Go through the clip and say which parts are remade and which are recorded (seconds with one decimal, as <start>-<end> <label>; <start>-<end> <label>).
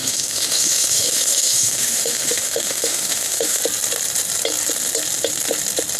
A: 0.0-3.6 remade; 3.6-6.0 recorded